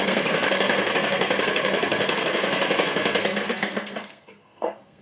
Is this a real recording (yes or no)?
no